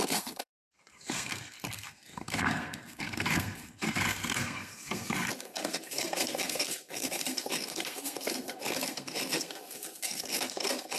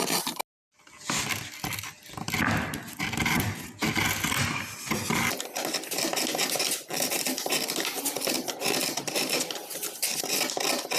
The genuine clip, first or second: second